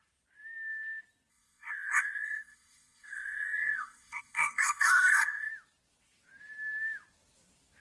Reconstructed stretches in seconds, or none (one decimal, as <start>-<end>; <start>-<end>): 1.3-5.5